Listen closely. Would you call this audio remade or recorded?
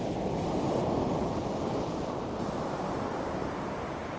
remade